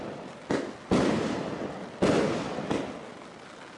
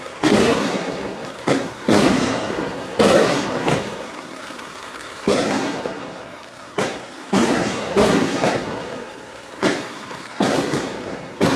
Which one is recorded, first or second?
first